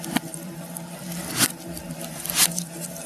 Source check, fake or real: fake